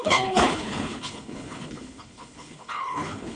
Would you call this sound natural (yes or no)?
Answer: no